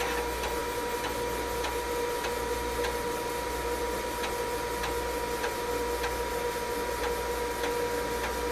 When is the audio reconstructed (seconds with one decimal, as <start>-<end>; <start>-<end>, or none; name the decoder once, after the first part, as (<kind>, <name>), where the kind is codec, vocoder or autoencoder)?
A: none